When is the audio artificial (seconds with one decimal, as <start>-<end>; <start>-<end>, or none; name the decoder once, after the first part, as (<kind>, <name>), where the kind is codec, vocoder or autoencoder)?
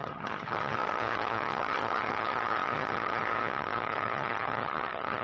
0.0-5.2 (vocoder, HiFi-GAN)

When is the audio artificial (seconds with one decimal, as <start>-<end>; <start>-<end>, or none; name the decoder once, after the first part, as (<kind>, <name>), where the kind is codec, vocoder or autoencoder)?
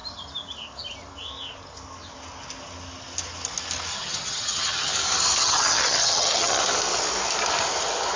3.9-4.9 (vocoder, HiFi-GAN); 5.4-6.6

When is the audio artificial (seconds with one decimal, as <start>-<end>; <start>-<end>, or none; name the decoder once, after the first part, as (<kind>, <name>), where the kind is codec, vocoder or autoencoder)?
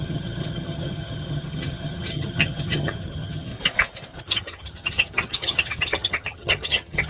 0.0-3.5 (vocoder, HiFi-GAN); 4.2-7.1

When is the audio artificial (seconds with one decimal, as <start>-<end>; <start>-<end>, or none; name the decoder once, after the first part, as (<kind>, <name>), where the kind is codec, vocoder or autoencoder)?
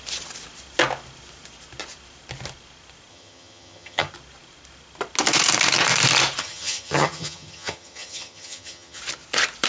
3.1-4.1 (vocoder, HiFi-GAN); 6.4-9.0